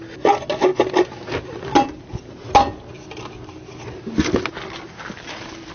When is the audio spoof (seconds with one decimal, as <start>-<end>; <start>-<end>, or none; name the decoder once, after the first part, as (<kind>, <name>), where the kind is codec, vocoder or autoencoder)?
none